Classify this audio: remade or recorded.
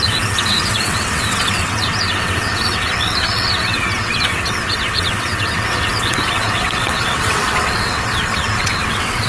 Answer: remade